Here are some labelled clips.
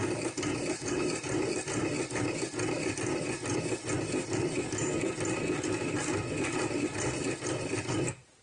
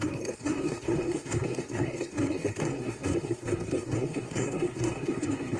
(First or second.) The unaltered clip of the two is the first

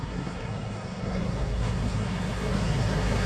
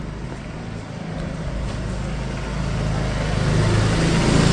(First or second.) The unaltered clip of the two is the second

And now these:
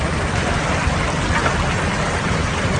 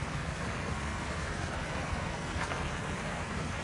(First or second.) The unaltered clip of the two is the first